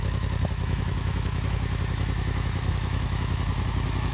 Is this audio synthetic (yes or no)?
yes